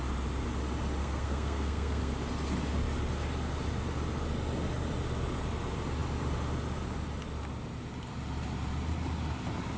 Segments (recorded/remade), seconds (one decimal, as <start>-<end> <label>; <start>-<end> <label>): 0.0-1.0 recorded; 1.0-2.1 remade; 2.1-9.8 recorded